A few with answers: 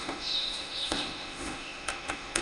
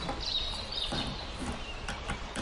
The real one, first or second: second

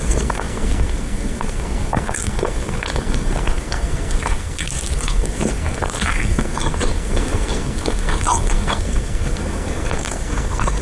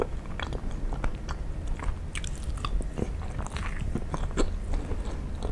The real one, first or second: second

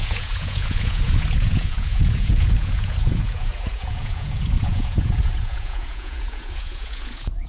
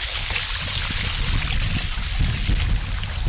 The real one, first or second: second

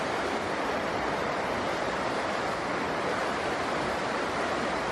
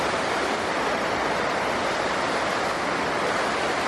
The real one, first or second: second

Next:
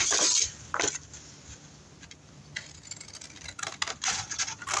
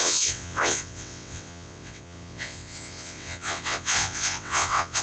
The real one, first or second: first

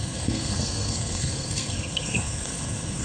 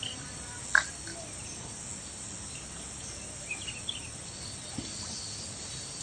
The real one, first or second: second